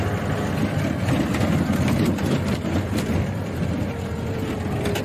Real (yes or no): yes